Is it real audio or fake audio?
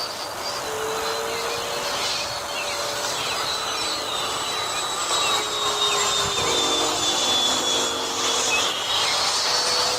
real